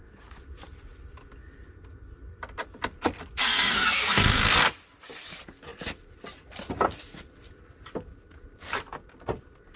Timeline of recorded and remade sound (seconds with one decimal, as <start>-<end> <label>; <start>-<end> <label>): 0.0-3.4 recorded; 3.4-4.6 remade; 4.6-9.8 recorded